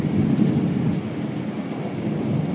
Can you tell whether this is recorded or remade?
recorded